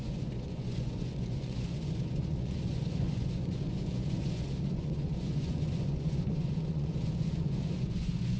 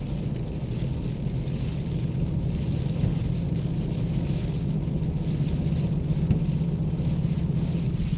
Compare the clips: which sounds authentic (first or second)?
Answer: second